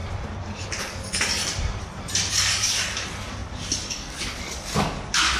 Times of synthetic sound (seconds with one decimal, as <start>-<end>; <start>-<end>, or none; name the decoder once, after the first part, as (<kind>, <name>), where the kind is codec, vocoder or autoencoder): 0.8-1.4 (codec, DAC); 2.3-5.4